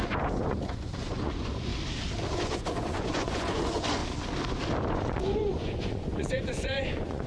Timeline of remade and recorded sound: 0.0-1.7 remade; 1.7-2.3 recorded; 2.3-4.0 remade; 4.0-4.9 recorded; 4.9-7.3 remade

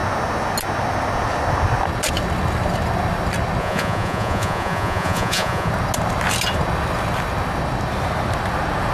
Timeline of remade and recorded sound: 0.0-3.6 recorded; 3.6-5.7 remade; 5.7-8.9 recorded

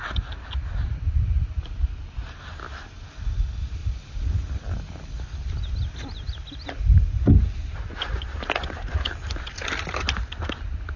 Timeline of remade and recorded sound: 0.0-11.0 recorded